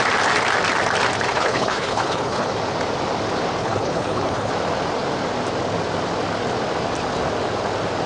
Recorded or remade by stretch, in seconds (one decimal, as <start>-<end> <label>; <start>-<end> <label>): 0.0-1.3 recorded; 1.3-2.5 remade; 2.5-3.6 recorded; 3.6-4.5 remade; 4.5-8.1 recorded